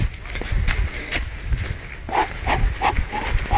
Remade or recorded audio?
recorded